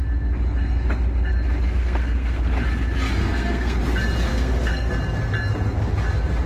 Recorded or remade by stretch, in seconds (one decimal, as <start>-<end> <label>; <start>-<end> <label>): 0.0-1.8 recorded; 1.8-2.5 remade; 2.5-3.2 recorded; 3.2-3.8 remade; 3.8-4.3 recorded; 4.3-4.9 remade; 4.9-6.5 recorded